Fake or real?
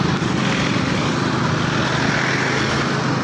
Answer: real